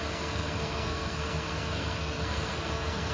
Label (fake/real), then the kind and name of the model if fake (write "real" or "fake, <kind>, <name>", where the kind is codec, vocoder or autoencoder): fake, codec, SNAC